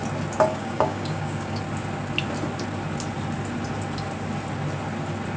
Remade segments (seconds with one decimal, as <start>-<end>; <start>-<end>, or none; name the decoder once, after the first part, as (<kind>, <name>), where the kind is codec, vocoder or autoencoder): 0.5-1.6 (codec, DAC)